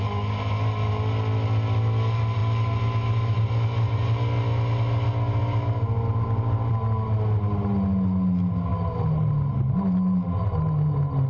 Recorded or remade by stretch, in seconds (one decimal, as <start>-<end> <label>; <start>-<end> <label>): 0.0-11.3 recorded